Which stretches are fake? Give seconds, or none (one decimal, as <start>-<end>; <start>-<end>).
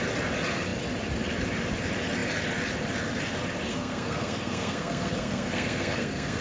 3.7-6.4